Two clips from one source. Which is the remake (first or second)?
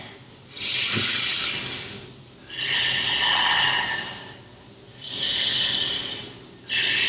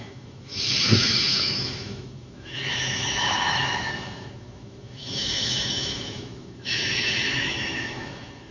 second